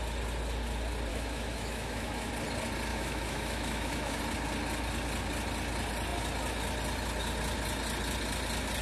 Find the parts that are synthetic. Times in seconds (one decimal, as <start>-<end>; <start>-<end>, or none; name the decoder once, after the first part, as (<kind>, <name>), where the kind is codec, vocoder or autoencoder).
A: 1.1-2.3 (autoencoder, DAC-VAE); 2.9-4.2